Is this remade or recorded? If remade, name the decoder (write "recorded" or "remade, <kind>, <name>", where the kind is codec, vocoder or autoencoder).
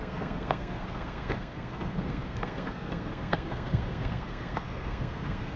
remade, codec, SNAC